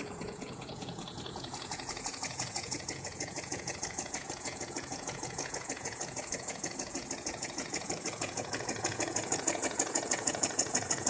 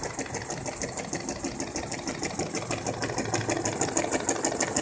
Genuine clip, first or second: second